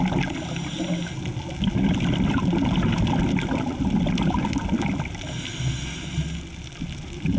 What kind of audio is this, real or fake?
real